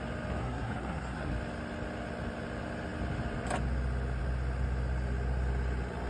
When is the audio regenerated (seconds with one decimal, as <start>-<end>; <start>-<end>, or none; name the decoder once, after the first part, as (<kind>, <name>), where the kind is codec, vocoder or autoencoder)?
0.4-1.3 (codec, SNAC)